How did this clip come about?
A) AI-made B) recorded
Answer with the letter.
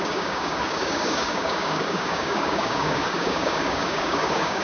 A